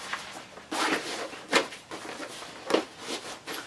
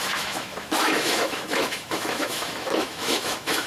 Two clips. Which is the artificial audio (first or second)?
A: second